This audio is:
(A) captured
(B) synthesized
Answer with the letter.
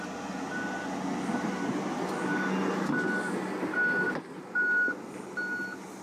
A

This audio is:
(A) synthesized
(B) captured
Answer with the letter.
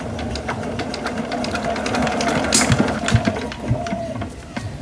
B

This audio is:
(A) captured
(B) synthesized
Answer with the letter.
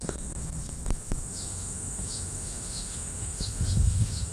B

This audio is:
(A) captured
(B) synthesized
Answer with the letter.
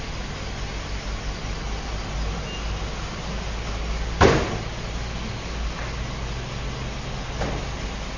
A